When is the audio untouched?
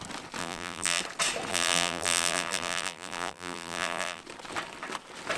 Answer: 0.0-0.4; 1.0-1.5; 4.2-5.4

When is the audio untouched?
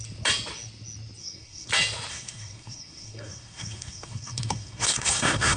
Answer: 0.0-1.2; 1.7-2.1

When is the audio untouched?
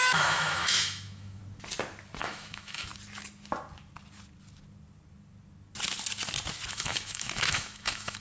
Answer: 1.4-2.2; 2.9-6.7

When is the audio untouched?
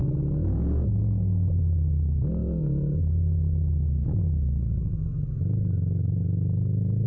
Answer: 1.0-2.4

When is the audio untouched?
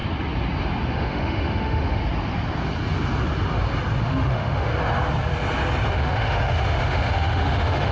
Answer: 0.0-0.9; 2.0-4.0; 4.7-5.9